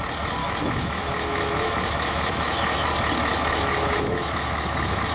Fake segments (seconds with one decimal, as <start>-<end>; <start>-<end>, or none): 0.4-2.9; 3.3-5.1